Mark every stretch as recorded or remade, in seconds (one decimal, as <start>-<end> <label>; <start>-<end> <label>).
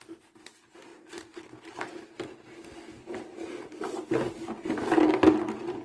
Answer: 0.0-5.8 recorded